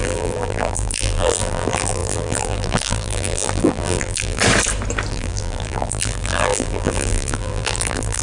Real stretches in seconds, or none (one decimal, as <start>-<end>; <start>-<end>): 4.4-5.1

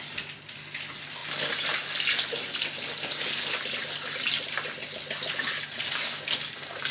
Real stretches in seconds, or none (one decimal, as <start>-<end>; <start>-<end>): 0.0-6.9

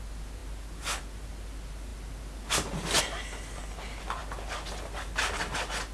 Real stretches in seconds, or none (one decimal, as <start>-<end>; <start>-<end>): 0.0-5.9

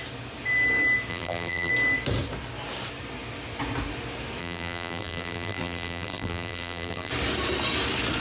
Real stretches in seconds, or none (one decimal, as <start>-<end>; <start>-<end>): 0.0-1.1; 1.7-4.4; 7.1-8.2

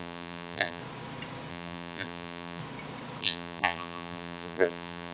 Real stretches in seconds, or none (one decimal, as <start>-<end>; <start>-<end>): 0.8-1.5; 2.6-3.2

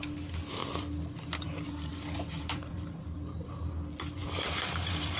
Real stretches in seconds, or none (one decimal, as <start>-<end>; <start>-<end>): 0.0-0.6; 3.7-4.2

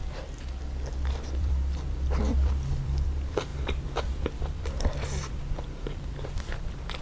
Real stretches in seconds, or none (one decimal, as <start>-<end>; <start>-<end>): 0.0-1.1